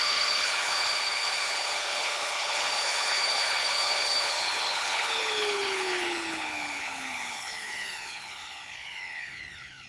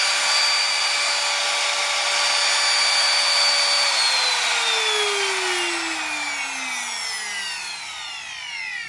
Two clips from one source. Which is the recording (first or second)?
second